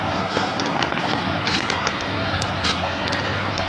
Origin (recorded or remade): remade